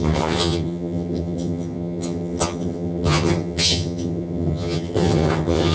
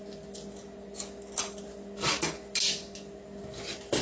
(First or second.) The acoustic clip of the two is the second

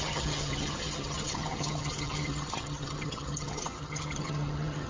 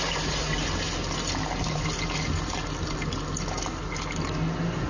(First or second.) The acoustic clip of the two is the second